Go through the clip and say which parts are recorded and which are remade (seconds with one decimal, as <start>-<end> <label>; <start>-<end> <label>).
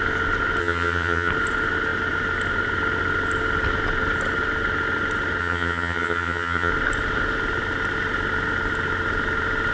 0.0-0.6 recorded; 0.6-1.3 remade; 1.3-5.4 recorded; 5.4-6.7 remade; 6.7-9.7 recorded